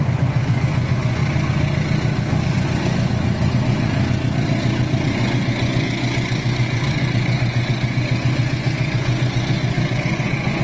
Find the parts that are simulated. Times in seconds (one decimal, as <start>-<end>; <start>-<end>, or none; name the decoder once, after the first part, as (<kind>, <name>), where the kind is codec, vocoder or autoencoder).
0.0-1.2 (vocoder, Vocos); 2.5-3.1; 5.1-10.6